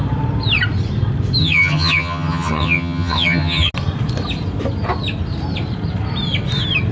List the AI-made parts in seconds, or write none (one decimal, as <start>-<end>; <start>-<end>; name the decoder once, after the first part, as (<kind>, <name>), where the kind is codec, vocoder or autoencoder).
1.4-3.7 (vocoder, HiFi-GAN)